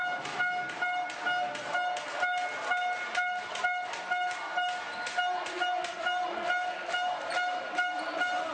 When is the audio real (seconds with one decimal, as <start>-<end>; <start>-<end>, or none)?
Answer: 0.0-8.5